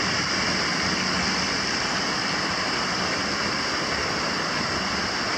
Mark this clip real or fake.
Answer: real